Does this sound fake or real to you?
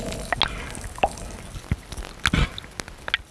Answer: real